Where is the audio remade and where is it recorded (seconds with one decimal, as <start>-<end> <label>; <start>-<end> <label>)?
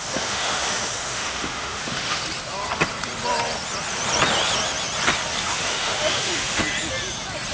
0.0-2.2 remade; 2.2-5.4 recorded; 5.4-6.6 remade; 6.6-7.5 recorded